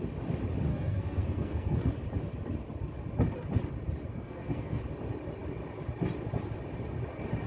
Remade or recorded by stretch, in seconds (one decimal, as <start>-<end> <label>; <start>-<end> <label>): 0.0-0.7 recorded; 0.7-1.9 remade; 1.9-4.1 recorded; 4.1-4.8 remade; 4.8-7.5 recorded